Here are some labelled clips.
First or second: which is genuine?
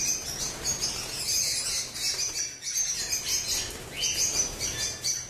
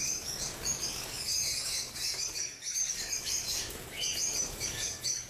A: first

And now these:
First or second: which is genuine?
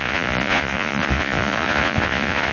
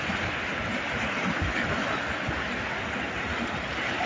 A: second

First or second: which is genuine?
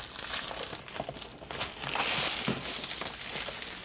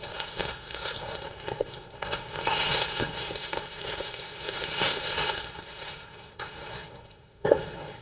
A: first